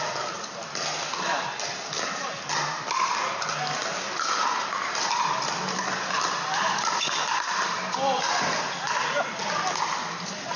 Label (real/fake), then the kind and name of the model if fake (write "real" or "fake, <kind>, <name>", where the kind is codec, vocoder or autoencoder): real